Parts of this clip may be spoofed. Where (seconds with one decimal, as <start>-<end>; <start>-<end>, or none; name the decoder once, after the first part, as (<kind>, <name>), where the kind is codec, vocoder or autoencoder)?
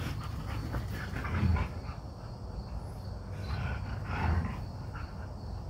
none